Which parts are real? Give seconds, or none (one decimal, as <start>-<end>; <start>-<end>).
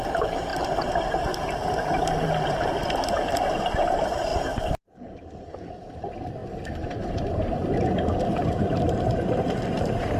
4.3-6.0